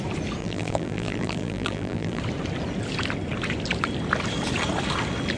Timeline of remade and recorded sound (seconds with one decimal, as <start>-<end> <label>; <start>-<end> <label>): 0.0-0.4 recorded; 0.4-2.2 remade; 2.2-5.4 recorded